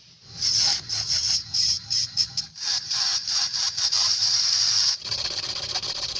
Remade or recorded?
remade